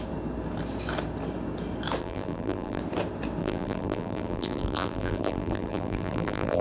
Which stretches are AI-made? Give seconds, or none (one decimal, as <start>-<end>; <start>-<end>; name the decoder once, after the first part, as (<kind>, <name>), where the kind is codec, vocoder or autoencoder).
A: 2.0-2.8 (vocoder, BigVGAN v2); 3.4-6.6